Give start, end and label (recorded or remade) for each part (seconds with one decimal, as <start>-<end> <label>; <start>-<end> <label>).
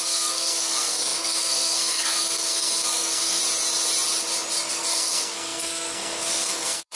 0.0-3.4 remade; 3.4-4.7 recorded; 4.7-7.0 remade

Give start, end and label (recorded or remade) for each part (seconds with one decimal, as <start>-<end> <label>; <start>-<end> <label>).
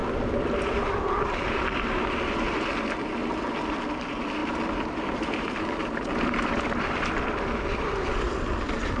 0.0-2.5 remade; 2.5-4.4 recorded; 4.4-8.6 remade; 8.6-9.0 recorded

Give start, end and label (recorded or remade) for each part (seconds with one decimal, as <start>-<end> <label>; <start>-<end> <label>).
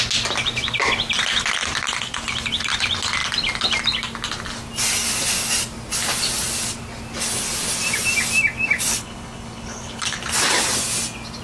0.0-8.9 recorded; 8.9-10.2 remade; 10.2-11.4 recorded